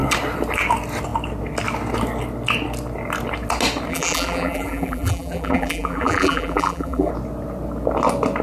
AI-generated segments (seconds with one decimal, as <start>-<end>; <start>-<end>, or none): 3.9-7.1